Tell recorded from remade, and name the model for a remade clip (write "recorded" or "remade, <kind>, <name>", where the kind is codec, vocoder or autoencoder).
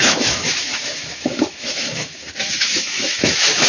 remade, autoencoder, DAC-VAE